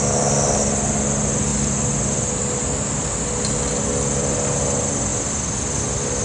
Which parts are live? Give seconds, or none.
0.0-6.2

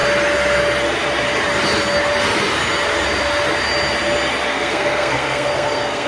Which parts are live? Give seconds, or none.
0.0-4.5

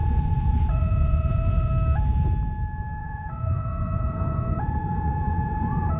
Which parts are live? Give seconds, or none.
1.7-3.0

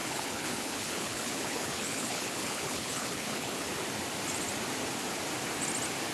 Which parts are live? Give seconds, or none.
3.7-6.1

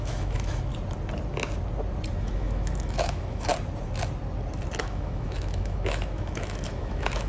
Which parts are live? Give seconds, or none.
0.7-2.2; 3.5-4.8